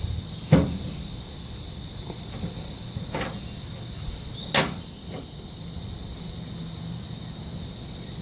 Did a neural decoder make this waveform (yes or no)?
no